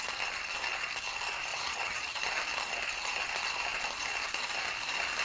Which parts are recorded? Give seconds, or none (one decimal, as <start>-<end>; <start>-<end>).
0.0-1.5; 2.2-5.2